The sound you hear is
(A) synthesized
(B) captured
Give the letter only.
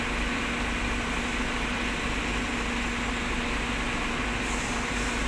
B